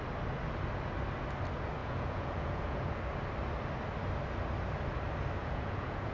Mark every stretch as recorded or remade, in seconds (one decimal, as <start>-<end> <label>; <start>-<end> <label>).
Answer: 0.0-1.8 recorded; 1.8-2.9 remade; 2.9-5.4 recorded; 5.4-6.1 remade